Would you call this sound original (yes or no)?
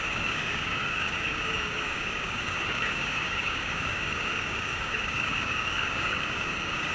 no